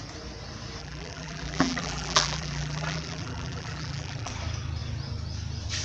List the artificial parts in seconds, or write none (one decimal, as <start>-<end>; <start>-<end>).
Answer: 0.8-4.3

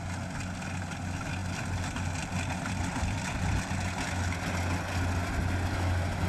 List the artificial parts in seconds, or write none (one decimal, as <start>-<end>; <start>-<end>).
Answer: 1.4-3.7

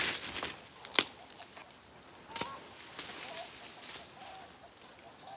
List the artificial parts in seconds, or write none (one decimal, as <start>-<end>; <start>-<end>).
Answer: none